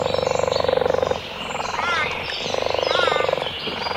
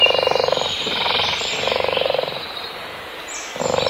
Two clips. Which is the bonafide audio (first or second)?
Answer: first